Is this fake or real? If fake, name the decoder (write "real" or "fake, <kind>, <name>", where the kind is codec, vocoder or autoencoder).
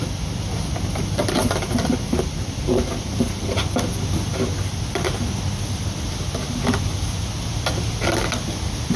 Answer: real